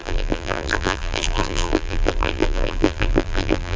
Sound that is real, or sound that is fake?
fake